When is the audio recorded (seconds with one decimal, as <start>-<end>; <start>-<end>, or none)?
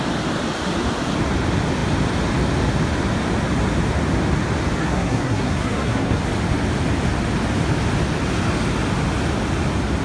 0.0-4.8; 6.2-10.0